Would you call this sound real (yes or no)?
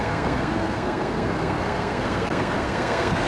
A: no